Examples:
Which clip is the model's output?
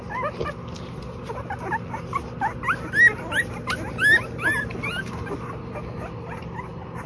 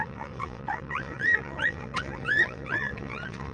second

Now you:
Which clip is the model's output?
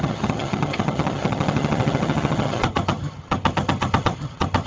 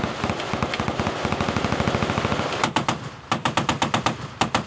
first